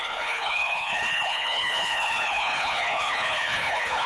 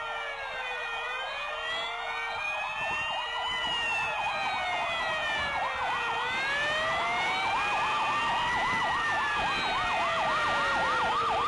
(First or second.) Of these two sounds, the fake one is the first